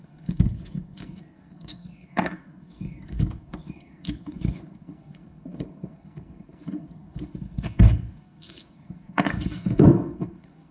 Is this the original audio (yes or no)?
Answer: no